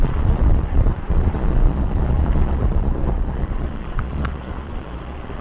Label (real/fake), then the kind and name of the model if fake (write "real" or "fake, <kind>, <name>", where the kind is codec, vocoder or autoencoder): fake, vocoder, Vocos